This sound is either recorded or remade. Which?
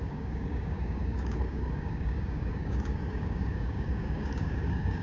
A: remade